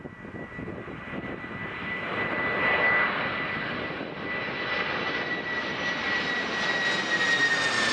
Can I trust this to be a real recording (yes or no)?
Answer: yes